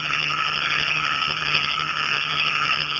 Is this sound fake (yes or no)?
yes